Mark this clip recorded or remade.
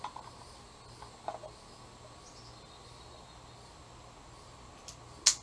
recorded